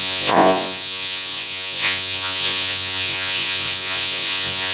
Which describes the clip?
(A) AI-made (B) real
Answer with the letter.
A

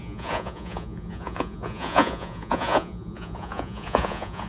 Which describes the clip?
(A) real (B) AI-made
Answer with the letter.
B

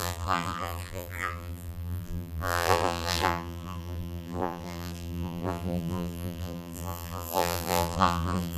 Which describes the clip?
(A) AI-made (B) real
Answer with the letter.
A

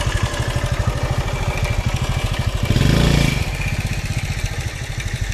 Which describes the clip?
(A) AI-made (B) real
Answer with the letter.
B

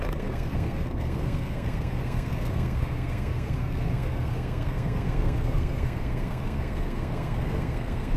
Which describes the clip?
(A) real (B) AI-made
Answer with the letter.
B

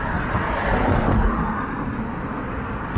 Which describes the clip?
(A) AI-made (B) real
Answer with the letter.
B